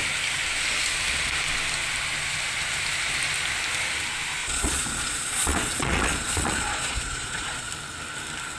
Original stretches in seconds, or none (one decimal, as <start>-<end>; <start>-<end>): 0.0-4.4; 7.7-8.6